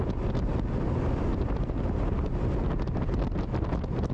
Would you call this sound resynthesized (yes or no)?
no